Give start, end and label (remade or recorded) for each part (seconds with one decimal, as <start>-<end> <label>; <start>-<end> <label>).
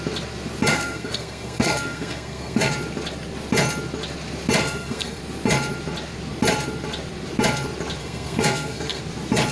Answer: 0.0-0.7 recorded; 0.7-2.7 remade; 2.7-4.6 recorded; 4.6-5.2 remade; 5.2-8.0 recorded; 8.0-9.0 remade; 9.0-9.5 recorded